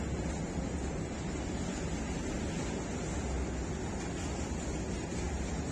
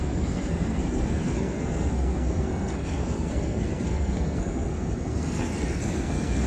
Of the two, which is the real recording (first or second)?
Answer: first